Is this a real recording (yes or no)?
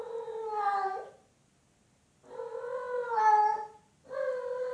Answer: yes